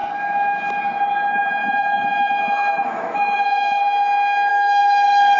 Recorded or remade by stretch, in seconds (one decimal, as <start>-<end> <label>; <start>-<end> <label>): 0.0-0.8 remade; 0.8-1.6 recorded; 1.6-3.8 remade; 3.8-4.5 recorded; 4.5-5.4 remade